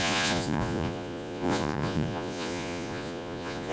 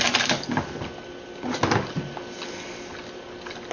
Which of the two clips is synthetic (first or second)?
first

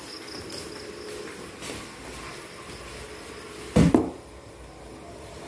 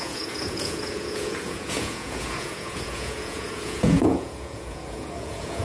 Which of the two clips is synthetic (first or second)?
second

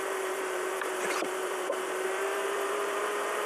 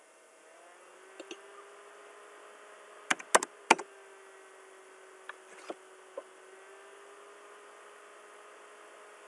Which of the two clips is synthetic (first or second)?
first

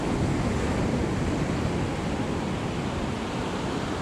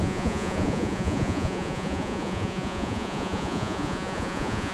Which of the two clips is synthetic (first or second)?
second